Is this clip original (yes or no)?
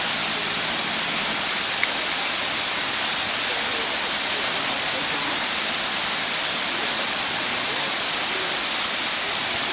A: yes